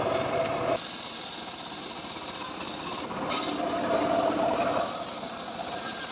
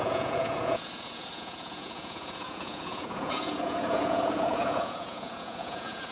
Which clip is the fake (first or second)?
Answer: second